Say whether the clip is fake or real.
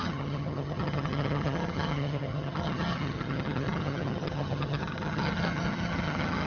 fake